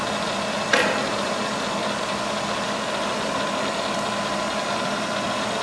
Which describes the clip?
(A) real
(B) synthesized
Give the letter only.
A